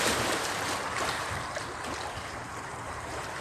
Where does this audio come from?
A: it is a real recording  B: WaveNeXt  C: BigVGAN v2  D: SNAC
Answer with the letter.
C